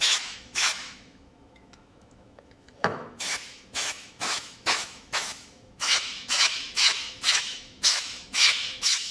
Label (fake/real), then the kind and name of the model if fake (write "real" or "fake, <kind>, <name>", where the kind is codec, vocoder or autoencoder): fake, autoencoder, DAC-VAE